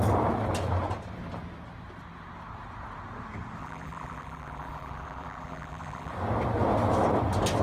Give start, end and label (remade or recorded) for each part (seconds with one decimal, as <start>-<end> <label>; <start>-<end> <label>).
0.0-3.6 recorded; 3.6-6.1 remade; 6.1-7.6 recorded